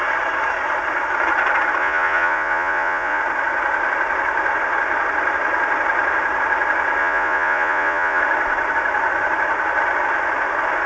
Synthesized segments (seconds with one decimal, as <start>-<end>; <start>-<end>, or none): 1.8-3.2; 7.0-8.2